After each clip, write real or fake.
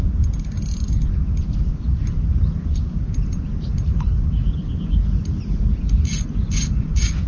real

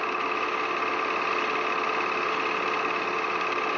real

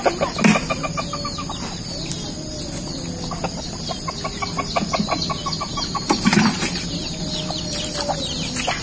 real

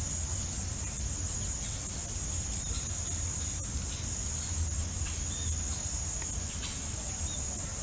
real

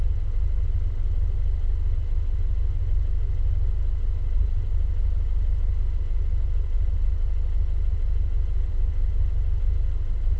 real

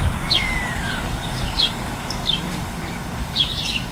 fake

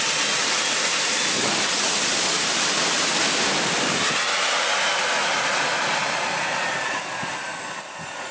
real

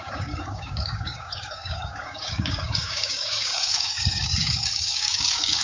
fake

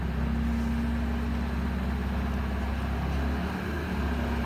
real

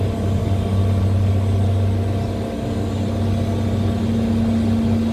real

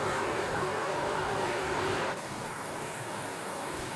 fake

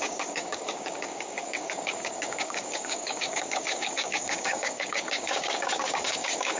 fake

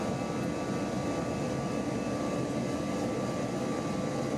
real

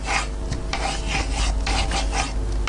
real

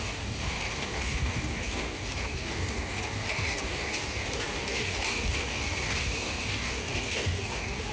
fake